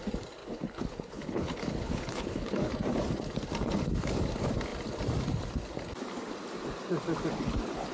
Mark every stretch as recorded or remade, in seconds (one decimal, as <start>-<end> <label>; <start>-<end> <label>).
0.0-0.4 recorded; 0.4-2.7 remade; 2.7-7.9 recorded